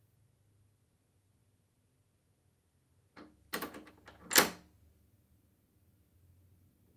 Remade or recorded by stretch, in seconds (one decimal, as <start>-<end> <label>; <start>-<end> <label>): 0.0-7.0 recorded